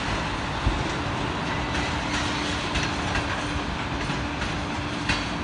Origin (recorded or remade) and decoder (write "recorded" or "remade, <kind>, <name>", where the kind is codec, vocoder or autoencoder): recorded